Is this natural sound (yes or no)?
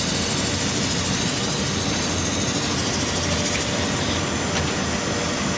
yes